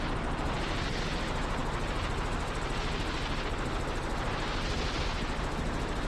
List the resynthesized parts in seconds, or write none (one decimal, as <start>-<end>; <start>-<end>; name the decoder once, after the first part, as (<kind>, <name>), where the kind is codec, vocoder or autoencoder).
none